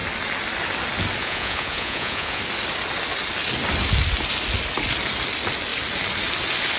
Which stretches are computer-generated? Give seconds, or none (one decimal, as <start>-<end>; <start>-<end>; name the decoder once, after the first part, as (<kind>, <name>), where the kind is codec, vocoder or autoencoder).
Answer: 1.2-2.4 (vocoder, Vocos)